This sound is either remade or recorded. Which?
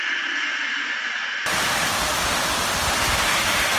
recorded